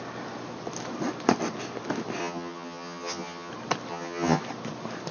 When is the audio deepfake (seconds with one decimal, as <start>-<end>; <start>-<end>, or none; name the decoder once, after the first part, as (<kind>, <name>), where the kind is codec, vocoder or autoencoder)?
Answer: 2.2-3.5 (vocoder, HiFi-GAN); 3.9-4.4